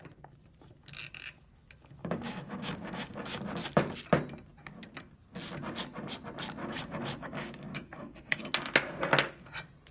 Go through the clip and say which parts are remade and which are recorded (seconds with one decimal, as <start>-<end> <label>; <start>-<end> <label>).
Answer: 0.0-2.0 recorded; 2.0-3.4 remade; 3.4-6.6 recorded; 6.6-8.4 remade; 8.4-9.9 recorded